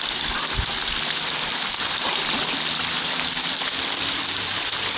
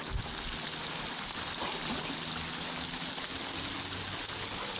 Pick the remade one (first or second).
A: first